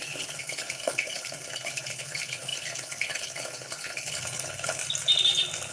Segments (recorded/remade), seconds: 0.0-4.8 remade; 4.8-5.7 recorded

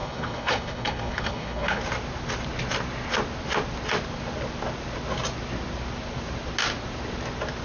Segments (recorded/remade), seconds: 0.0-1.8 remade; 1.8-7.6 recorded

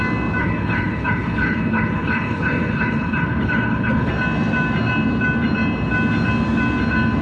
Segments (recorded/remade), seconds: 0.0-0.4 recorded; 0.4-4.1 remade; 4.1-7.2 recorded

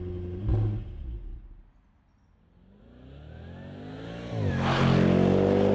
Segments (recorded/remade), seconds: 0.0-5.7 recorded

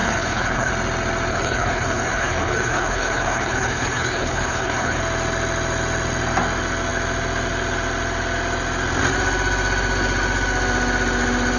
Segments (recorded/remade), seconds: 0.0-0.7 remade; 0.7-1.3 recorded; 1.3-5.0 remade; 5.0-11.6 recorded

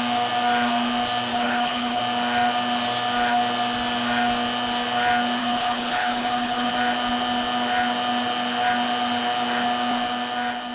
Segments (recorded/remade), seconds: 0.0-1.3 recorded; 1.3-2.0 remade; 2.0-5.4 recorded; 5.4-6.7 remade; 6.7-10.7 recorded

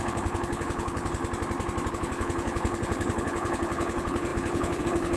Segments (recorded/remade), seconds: 0.0-1.2 remade; 1.2-1.9 recorded; 1.9-5.2 remade